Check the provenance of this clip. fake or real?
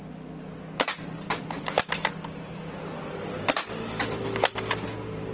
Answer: fake